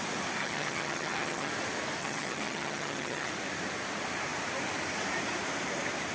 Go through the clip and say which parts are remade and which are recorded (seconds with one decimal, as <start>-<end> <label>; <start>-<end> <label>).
0.0-0.4 recorded; 0.4-1.5 remade; 1.5-2.0 recorded; 2.0-3.3 remade; 3.3-6.1 recorded